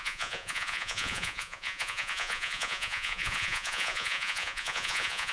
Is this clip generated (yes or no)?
yes